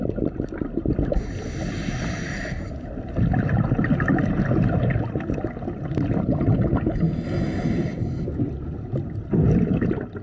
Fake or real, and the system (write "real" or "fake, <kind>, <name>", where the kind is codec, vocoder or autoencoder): real